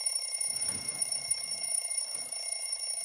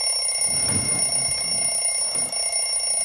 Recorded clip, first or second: second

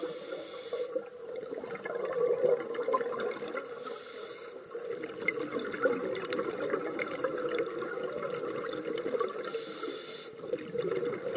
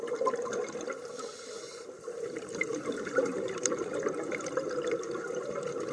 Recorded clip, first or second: first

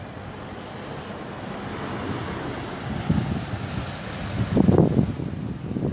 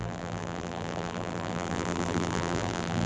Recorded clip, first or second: first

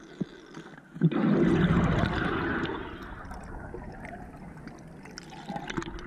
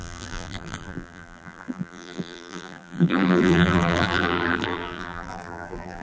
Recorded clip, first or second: first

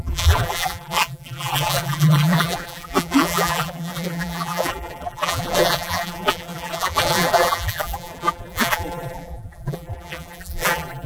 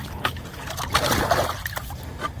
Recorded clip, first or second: second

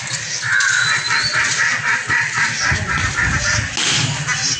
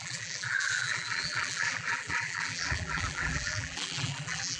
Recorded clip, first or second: first